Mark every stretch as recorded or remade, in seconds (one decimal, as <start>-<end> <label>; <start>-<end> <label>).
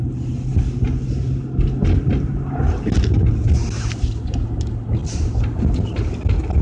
0.0-6.6 recorded